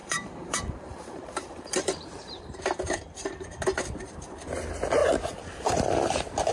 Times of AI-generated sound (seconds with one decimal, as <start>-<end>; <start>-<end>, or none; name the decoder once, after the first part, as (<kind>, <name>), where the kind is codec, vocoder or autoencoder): 0.0-2.6 (vocoder, BigVGAN v2)

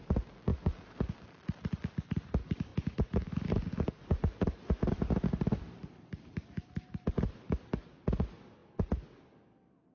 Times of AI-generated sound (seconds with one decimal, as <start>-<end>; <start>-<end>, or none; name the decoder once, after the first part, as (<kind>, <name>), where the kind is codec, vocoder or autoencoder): 0.5-1.1 (vocoder, BigVGAN v2); 2.7-7.5

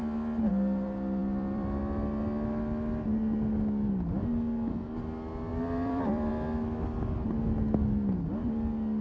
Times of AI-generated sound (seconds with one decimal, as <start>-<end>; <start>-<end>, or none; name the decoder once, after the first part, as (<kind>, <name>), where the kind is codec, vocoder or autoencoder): 0.0-0.5 (vocoder, BigVGAN v2); 1.2-1.8; 5.5-6.3

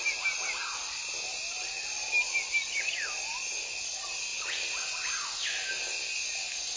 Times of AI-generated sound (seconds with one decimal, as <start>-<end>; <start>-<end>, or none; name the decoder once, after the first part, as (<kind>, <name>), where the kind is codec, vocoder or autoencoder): none

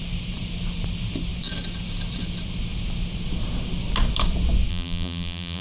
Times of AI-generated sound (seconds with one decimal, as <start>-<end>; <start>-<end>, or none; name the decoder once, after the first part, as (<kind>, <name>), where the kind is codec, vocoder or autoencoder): 4.7-5.6 (vocoder, BigVGAN v2)

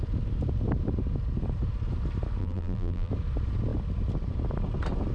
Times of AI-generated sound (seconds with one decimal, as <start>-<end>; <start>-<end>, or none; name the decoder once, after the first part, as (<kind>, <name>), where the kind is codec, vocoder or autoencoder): 2.4-3.1 (vocoder, BigVGAN v2)